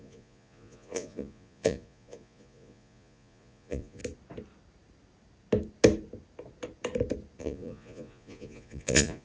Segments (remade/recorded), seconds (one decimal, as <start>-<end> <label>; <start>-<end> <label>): 0.0-4.0 remade; 4.0-7.4 recorded; 7.4-9.2 remade